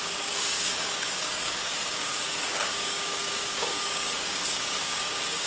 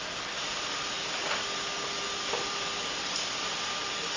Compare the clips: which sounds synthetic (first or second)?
first